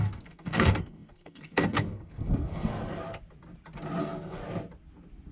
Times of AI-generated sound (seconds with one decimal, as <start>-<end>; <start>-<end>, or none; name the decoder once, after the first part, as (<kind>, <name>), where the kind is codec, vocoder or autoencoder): 0.0-2.7 (codec, SNAC); 4.0-4.4